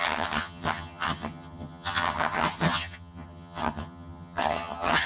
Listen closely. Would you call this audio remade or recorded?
remade